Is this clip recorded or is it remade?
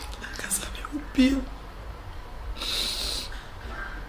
recorded